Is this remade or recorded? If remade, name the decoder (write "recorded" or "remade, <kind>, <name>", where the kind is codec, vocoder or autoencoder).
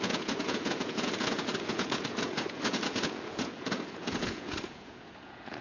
remade, vocoder, Vocos